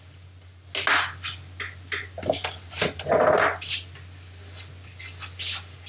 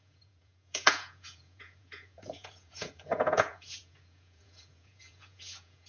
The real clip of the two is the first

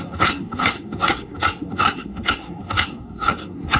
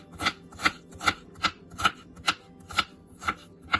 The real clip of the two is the second